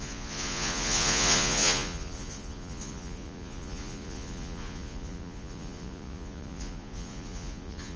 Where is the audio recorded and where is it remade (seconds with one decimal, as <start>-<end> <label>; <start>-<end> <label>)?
0.0-8.0 remade